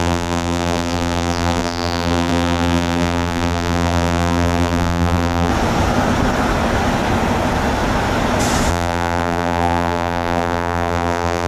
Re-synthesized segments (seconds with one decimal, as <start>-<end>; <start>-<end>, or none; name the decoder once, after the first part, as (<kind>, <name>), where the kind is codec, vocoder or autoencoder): 0.0-5.5 (vocoder, BigVGAN v2); 8.7-11.5